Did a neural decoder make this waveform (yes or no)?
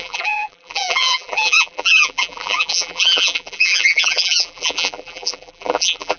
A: yes